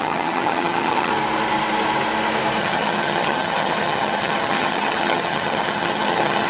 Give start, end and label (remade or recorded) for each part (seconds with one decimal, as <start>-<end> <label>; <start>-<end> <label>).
0.0-1.1 remade; 1.1-2.6 recorded; 2.6-6.5 remade